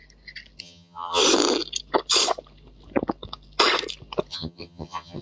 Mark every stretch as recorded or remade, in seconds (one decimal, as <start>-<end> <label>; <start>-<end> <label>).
0.0-0.6 recorded; 0.6-1.2 remade; 1.2-4.3 recorded; 4.3-5.2 remade